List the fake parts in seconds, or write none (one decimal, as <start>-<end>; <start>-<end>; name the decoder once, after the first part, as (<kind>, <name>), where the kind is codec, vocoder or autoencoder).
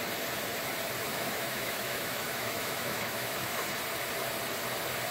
1.1-3.6 (autoencoder, DAC-VAE)